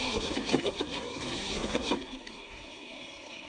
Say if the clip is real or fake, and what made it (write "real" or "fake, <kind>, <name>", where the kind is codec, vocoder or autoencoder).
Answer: fake, codec, SNAC